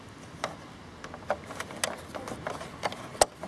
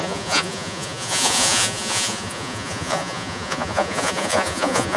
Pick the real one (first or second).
first